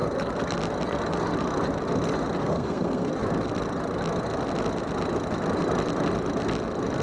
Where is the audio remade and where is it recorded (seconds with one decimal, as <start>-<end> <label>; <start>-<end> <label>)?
0.0-2.4 recorded; 2.4-3.1 remade; 3.1-7.0 recorded